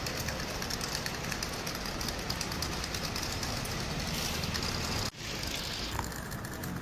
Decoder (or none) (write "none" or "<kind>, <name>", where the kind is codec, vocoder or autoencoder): none